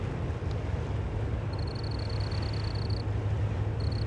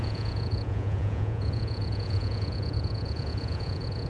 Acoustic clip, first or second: first